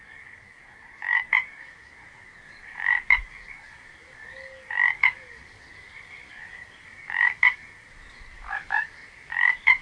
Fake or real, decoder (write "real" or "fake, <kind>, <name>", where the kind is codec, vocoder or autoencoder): fake, codec, DAC